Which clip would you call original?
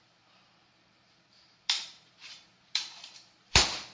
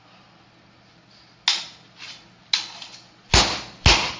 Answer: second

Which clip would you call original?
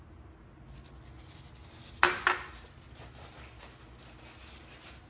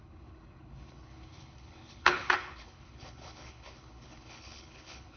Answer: first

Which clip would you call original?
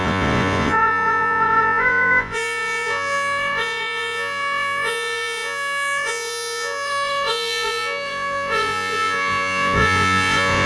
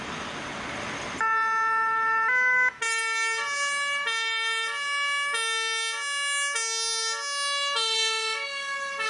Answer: second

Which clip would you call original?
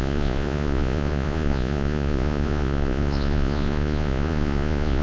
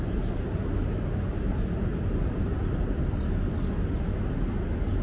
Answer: second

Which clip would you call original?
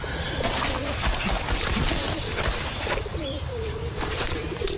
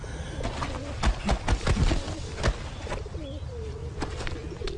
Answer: second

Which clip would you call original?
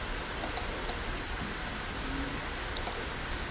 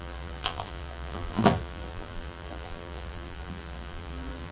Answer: first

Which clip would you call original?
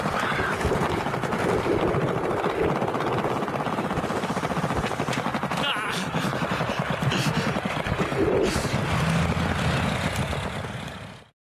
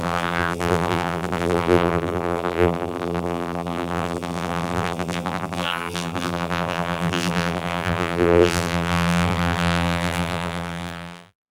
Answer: first